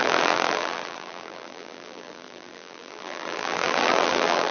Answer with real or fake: fake